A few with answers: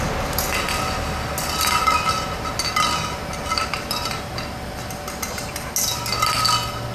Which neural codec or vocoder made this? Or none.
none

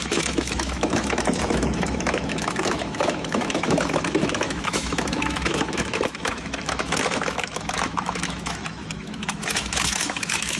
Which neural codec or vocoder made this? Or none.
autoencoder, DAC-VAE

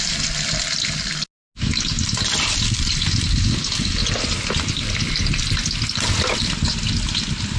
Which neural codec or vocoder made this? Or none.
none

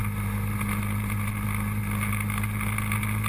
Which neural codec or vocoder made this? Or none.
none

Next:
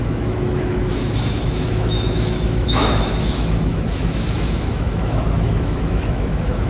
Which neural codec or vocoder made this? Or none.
autoencoder, DAC-VAE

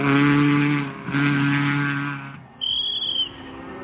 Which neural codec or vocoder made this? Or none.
none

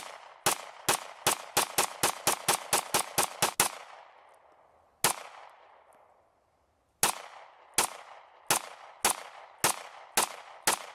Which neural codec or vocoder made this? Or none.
none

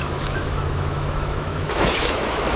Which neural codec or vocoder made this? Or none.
autoencoder, DAC-VAE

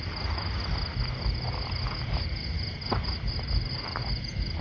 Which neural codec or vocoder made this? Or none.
none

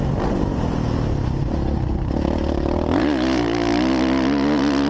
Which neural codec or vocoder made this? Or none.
none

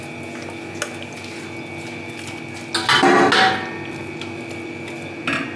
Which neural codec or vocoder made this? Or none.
none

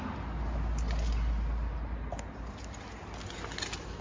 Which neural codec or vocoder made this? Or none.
none